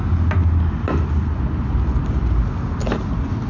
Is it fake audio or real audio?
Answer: real